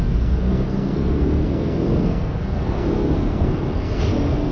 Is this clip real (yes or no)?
no